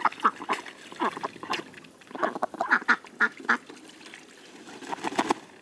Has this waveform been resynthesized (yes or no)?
no